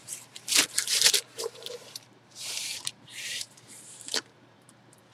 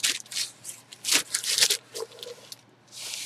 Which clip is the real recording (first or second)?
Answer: second